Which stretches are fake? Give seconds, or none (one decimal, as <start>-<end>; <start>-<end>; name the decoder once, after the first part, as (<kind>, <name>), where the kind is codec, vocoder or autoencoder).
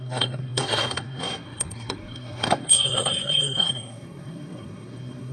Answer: 0.0-5.3 (codec, SNAC)